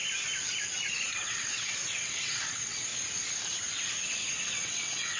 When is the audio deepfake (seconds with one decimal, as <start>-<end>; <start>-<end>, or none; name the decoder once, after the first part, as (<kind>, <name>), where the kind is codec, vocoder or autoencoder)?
1.1-2.9 (vocoder, WaveNeXt); 4.5-5.2